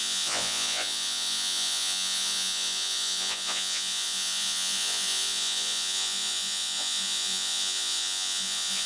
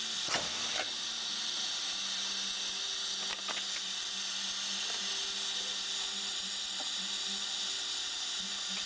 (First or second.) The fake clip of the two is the first